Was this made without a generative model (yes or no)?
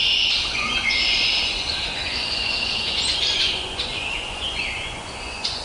no